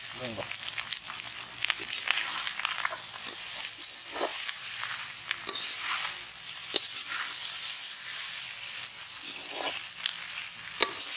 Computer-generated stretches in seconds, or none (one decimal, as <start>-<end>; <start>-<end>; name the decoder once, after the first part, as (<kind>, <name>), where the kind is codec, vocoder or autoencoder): 4.3-5.8 (vocoder, BigVGAN v2)